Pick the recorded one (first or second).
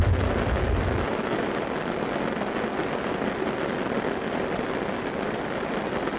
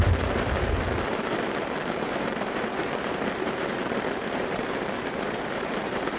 first